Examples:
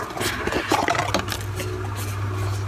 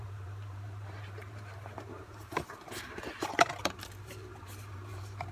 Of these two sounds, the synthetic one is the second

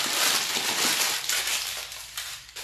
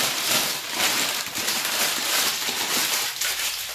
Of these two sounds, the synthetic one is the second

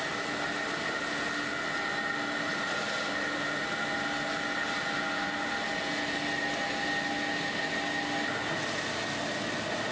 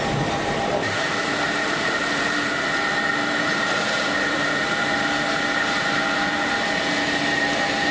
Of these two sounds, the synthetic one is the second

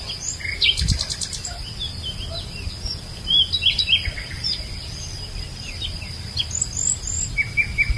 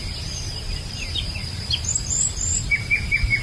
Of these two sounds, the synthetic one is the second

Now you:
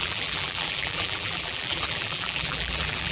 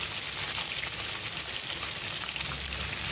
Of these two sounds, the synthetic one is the first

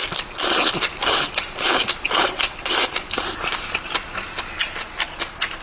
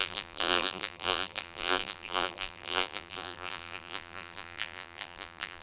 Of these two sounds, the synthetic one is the second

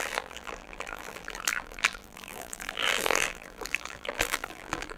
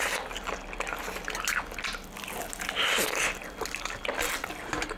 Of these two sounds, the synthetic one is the first